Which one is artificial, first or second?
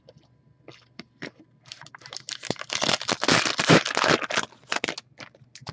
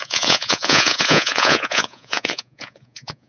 second